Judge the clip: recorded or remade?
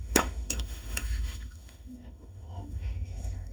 remade